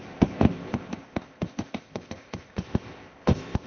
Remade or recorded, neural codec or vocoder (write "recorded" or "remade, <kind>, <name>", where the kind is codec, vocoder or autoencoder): remade, codec, ZipCodec